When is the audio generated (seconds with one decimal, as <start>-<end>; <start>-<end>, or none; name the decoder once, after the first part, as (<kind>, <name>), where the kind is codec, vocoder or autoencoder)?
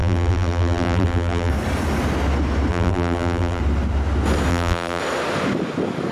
0.0-1.5 (vocoder, BigVGAN v2); 2.7-3.6; 4.5-5.0